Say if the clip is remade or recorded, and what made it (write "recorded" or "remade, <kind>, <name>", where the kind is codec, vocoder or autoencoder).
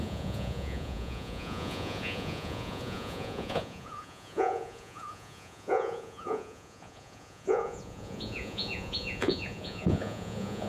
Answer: remade, vocoder, Vocos